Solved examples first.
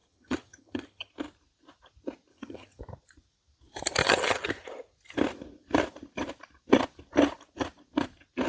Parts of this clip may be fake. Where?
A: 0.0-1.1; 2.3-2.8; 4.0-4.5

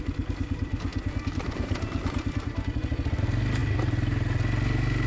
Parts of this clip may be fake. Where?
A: none

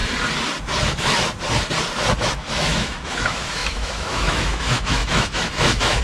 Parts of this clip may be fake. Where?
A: 2.2-6.0

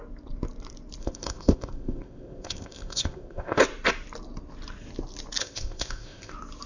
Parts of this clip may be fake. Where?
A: 1.0-3.6; 5.4-6.3